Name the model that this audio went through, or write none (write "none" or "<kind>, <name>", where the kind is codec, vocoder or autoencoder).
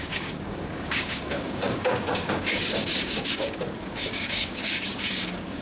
codec, DAC